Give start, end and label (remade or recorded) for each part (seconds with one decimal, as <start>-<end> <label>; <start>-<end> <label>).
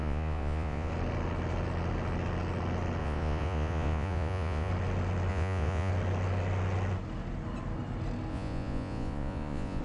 0.0-0.9 remade; 0.9-3.0 recorded; 3.0-4.7 remade; 4.7-5.3 recorded; 5.3-5.9 remade; 5.9-8.3 recorded; 8.3-9.8 remade